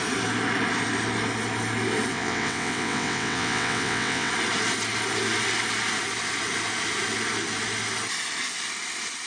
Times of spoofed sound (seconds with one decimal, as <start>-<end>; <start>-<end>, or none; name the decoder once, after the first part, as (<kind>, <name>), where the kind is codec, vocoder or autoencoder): 2.1-4.3 (vocoder, WaveNeXt)